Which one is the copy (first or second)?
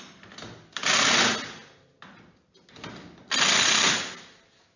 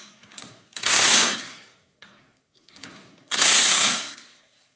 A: second